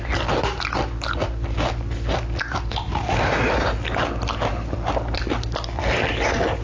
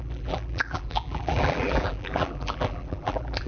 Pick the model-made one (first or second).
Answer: second